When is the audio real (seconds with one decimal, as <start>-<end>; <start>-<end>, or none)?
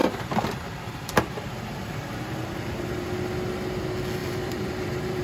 3.1-4.2